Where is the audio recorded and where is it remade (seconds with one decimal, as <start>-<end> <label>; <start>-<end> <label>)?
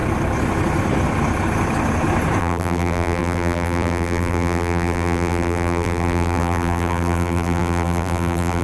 0.0-2.4 recorded; 2.4-8.6 remade